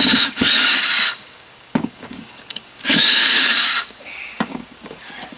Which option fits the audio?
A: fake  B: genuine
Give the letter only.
A